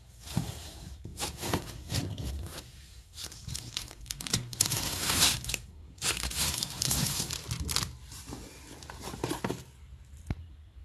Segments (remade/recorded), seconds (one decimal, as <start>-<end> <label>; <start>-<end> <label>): 0.0-7.3 remade; 7.3-10.4 recorded; 10.4-10.8 remade

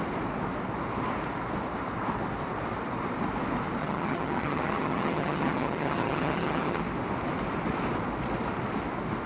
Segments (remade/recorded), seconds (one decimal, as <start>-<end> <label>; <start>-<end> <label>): 0.0-3.8 recorded; 3.8-6.8 remade; 6.8-9.3 recorded